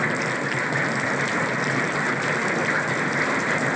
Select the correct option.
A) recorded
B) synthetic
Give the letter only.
A